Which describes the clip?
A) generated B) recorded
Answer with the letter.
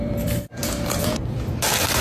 A